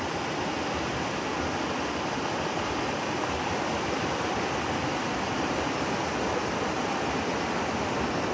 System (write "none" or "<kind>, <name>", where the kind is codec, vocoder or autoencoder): none